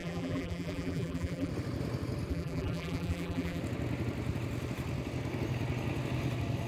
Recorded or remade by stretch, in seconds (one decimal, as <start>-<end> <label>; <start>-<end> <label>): 0.0-1.5 remade; 1.5-2.3 recorded; 2.3-3.6 remade; 3.6-6.7 recorded